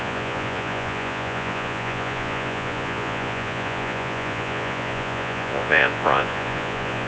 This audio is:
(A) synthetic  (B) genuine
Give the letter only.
A